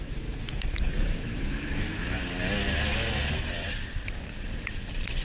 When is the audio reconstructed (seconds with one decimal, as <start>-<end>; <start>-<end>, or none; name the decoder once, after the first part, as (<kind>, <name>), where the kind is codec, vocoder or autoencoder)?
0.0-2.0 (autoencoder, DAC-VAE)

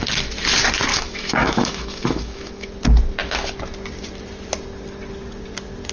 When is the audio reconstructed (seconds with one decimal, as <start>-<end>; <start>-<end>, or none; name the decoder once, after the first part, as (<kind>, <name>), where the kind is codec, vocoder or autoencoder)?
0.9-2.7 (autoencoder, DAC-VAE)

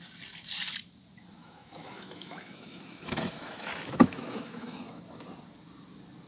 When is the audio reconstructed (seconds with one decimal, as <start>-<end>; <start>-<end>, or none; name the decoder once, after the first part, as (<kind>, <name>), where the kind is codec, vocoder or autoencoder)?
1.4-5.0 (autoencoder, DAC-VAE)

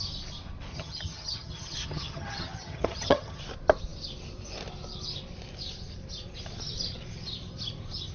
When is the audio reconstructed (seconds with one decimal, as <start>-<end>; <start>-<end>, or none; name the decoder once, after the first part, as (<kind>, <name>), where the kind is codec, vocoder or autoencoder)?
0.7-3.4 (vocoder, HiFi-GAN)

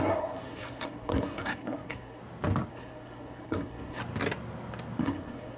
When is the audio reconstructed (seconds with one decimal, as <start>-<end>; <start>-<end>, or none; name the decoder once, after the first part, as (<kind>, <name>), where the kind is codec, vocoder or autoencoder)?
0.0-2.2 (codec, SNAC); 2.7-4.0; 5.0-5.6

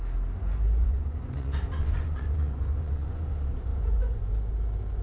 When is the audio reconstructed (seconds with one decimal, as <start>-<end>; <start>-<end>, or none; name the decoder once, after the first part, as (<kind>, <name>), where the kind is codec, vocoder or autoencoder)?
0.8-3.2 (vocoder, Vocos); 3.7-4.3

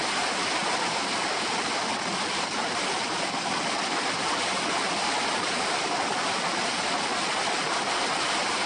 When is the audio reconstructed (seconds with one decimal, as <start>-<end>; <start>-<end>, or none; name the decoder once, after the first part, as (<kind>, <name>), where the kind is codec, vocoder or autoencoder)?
none

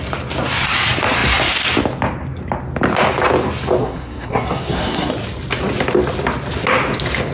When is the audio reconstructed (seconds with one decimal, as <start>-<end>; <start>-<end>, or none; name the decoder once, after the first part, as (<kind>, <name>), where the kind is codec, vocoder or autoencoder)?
3.8-5.1 (codec, SNAC)